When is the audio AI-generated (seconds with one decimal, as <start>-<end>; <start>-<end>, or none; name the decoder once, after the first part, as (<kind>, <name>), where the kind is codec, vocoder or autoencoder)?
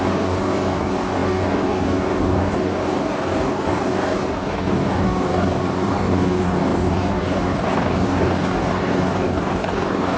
0.0-10.2 (codec, DAC)